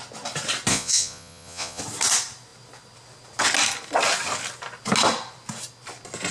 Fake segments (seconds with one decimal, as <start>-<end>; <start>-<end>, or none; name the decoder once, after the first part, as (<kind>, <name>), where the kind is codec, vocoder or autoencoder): 0.7-1.8 (vocoder, Vocos)